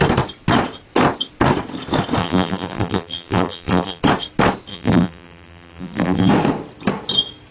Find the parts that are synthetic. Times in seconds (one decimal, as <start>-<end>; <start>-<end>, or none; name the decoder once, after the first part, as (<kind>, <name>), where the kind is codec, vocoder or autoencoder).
2.2-4.0 (vocoder, BigVGAN v2); 4.7-6.3